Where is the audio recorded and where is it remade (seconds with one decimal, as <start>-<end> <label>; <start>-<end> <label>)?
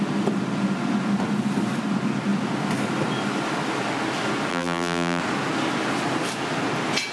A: 0.0-4.5 recorded; 4.5-5.2 remade; 5.2-7.1 recorded